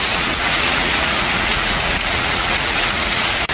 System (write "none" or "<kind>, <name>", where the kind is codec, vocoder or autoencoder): vocoder, Vocos